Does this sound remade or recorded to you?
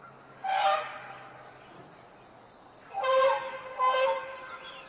recorded